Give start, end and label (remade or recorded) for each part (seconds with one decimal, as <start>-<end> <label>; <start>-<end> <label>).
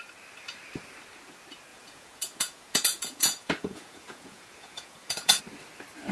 0.0-1.7 recorded; 1.7-5.4 remade; 5.4-6.1 recorded